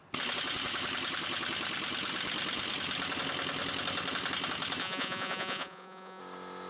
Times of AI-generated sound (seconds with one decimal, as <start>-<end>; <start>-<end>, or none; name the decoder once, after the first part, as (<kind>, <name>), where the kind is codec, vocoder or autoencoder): 4.8-6.2 (vocoder, Vocos)